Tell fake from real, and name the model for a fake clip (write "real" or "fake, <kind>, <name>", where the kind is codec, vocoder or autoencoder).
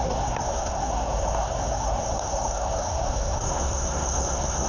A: fake, codec, SNAC